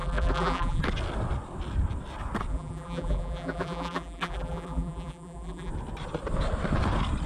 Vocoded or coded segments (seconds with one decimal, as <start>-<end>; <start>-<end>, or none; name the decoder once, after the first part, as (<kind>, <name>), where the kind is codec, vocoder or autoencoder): 0.0-0.8 (vocoder, BigVGAN v2); 2.5-5.7